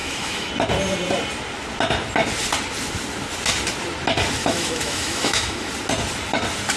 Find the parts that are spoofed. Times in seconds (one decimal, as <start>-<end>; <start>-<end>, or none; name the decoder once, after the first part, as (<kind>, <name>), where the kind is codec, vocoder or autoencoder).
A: 0.0-0.5 (autoencoder, DAC-VAE); 4.4-5.7